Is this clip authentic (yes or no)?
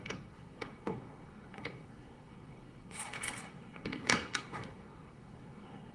no